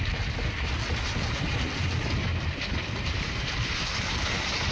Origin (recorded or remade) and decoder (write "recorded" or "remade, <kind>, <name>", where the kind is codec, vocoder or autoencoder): recorded